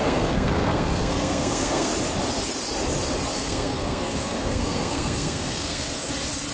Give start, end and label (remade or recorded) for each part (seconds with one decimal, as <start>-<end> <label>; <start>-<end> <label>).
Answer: 0.0-1.9 remade; 1.9-3.3 recorded; 3.3-6.1 remade; 6.1-6.5 recorded